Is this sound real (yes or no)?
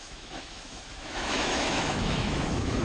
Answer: no